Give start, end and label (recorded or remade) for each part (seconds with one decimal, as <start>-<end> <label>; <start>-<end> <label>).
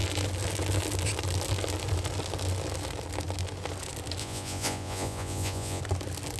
0.0-4.2 recorded; 4.2-5.8 remade; 5.8-6.4 recorded